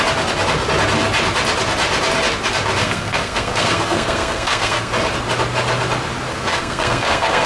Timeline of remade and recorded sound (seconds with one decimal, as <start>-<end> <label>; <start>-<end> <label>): 0.0-2.8 recorded; 2.8-4.9 remade; 4.9-6.3 recorded; 6.3-7.5 remade